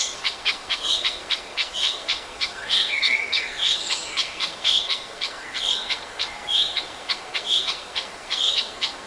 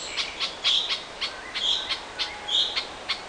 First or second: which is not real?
first